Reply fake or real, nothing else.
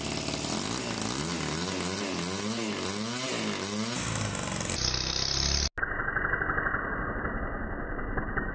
real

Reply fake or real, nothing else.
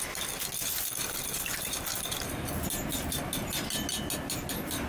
real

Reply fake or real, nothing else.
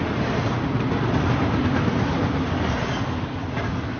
real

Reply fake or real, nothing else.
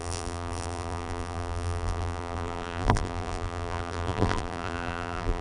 fake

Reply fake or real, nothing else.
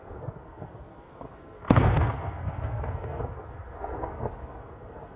fake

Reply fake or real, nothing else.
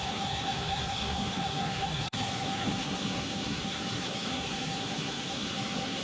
fake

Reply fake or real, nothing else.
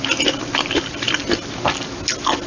real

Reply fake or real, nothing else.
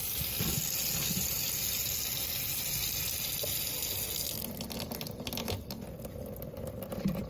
real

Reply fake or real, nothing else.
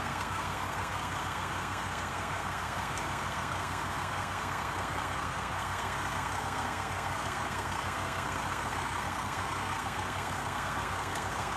fake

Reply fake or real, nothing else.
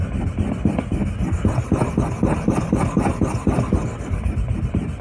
real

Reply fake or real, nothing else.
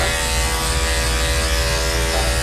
real